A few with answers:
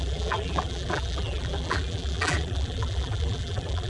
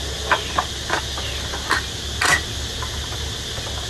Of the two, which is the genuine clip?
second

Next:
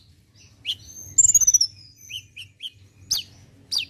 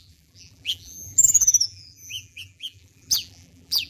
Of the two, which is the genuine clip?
first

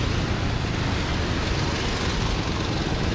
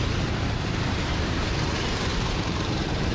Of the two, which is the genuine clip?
first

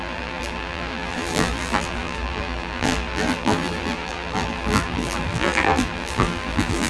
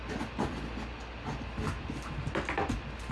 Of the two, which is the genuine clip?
second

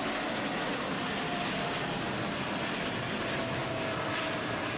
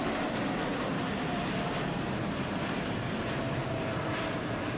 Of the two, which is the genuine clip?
first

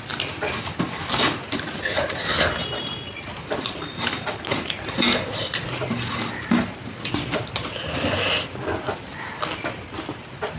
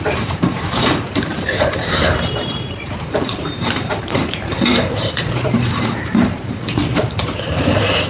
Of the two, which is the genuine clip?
first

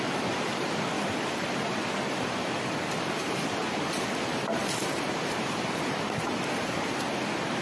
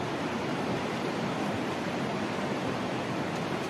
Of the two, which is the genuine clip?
second